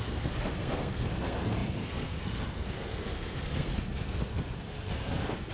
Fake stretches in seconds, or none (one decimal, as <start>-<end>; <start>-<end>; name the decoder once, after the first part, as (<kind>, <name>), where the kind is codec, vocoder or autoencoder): 0.0-5.5 (codec, SNAC)